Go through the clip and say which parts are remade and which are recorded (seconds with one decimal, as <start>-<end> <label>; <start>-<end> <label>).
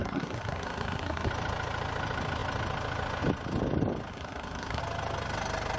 0.0-1.3 remade; 1.3-4.1 recorded; 4.1-4.8 remade; 4.8-5.8 recorded